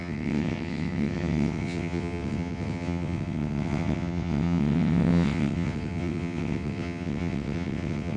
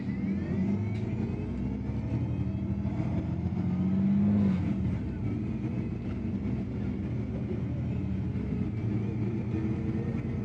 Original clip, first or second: second